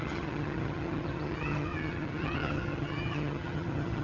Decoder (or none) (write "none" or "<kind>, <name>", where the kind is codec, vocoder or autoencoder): vocoder, HiFi-GAN